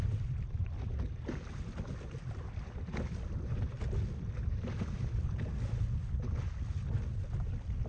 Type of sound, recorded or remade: recorded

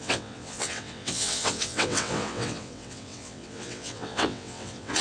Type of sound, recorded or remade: remade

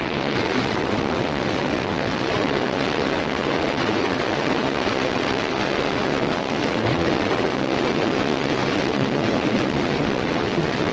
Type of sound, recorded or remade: remade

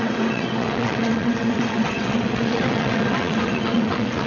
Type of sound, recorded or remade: remade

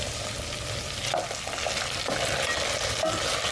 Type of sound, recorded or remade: recorded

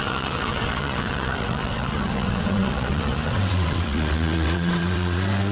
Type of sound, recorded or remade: remade